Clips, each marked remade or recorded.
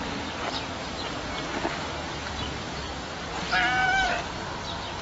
recorded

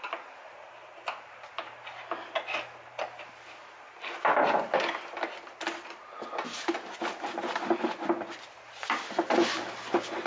recorded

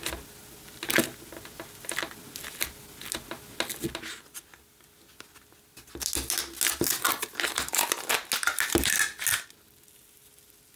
recorded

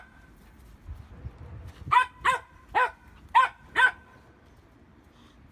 recorded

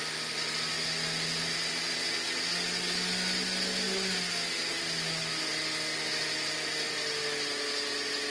recorded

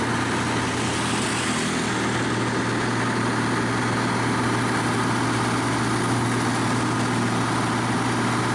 recorded